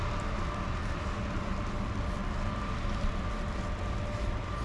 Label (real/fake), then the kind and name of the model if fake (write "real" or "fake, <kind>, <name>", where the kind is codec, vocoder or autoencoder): real